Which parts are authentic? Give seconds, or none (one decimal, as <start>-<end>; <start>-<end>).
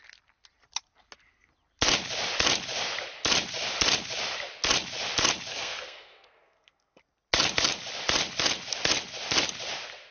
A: 0.0-5.5; 7.0-10.1